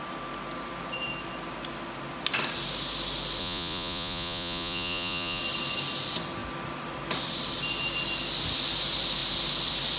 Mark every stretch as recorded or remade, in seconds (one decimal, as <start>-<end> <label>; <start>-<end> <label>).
0.0-3.4 recorded; 3.4-5.4 remade; 5.4-10.0 recorded